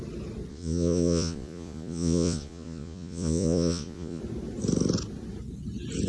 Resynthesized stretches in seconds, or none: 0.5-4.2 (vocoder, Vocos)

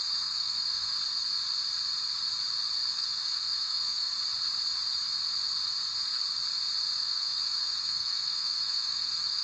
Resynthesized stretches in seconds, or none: 0.0-0.9 (autoencoder, DAC-VAE); 2.9-4.1; 7.0-9.4

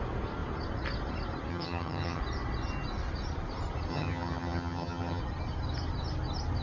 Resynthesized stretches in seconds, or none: 1.5-2.2 (vocoder, HiFi-GAN); 3.9-5.2

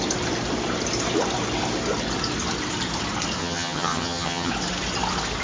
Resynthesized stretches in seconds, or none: 3.4-4.5 (vocoder, HiFi-GAN)

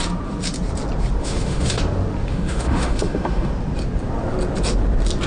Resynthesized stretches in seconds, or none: 1.2-1.8 (autoencoder, DAC-VAE); 2.3-3.5